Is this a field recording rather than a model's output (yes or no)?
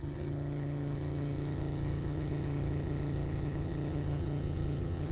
no